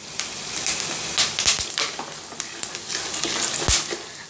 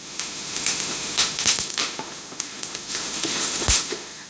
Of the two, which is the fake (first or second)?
second